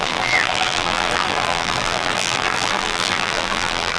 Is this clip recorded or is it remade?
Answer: remade